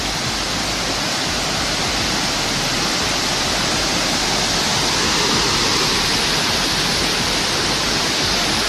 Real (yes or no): yes